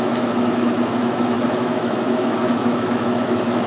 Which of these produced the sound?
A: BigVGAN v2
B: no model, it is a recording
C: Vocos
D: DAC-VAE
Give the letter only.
D